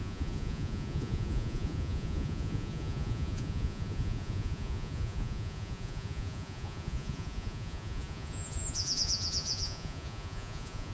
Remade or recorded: remade